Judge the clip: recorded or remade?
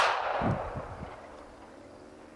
recorded